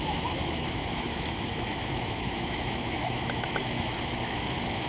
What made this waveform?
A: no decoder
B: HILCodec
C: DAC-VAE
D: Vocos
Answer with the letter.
C